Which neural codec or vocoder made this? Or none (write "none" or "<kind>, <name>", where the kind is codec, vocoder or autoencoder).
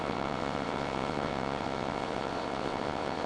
vocoder, WaveNeXt